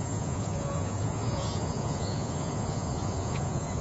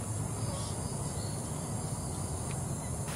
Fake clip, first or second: first